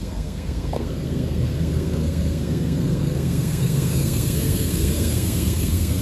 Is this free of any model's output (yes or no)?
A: no